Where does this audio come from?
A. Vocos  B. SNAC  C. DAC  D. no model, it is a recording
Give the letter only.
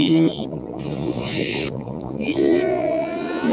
A